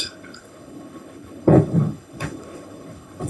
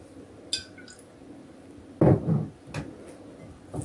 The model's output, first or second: first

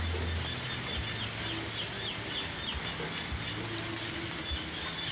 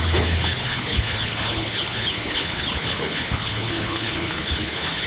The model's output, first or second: second